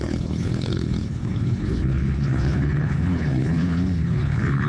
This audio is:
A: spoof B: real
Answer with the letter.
A